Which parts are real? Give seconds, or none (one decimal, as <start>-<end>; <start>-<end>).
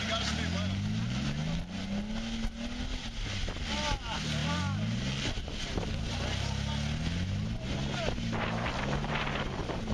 0.0-9.9